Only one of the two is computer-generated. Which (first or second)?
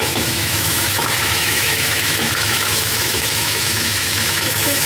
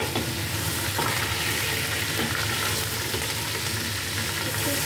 first